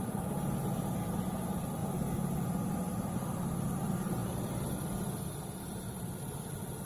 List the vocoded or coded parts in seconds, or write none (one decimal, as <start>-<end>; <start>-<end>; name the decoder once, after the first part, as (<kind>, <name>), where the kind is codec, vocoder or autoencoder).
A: 0.0-1.8 (vocoder, BigVGAN v2); 2.7-4.2; 4.8-6.9